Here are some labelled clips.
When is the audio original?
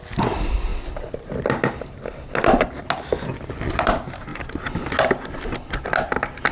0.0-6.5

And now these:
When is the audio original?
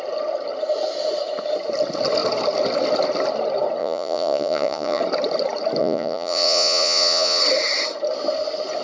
0.0-3.8; 5.0-5.8; 7.4-8.8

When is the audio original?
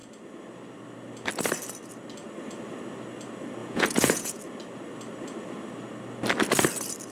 0.0-3.6; 4.4-7.1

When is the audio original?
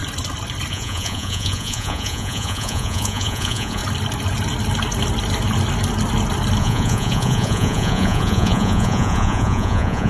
0.0-0.7; 3.8-6.6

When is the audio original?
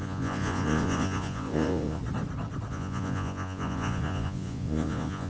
2.0-2.7